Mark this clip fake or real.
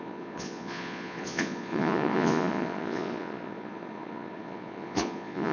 fake